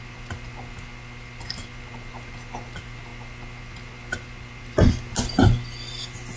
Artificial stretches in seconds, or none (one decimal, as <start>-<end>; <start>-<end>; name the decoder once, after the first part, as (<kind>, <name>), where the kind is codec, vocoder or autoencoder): none